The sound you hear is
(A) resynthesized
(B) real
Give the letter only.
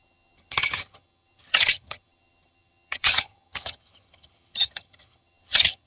A